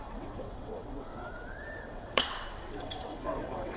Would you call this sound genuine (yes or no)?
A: no